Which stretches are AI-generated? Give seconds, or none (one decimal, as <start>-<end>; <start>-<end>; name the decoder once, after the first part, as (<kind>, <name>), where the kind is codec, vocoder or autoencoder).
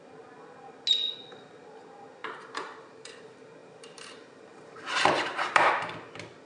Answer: 2.2-3.2 (vocoder, BigVGAN v2); 3.6-5.7